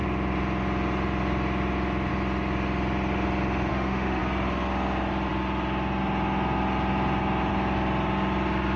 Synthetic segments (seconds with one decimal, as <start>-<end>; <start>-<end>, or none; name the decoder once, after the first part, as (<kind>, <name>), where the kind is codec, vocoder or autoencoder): 3.7-4.2 (autoencoder, DAC-VAE)